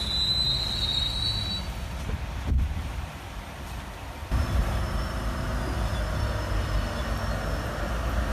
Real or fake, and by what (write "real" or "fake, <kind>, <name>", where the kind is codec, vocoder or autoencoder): real